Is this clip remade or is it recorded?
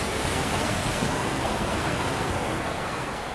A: remade